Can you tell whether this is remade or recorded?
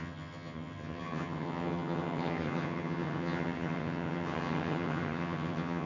remade